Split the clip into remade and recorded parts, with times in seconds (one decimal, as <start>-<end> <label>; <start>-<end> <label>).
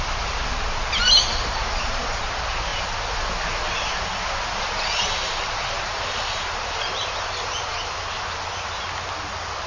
0.0-1.3 recorded; 1.3-2.2 remade; 2.2-2.7 recorded; 2.7-7.9 remade; 7.9-9.7 recorded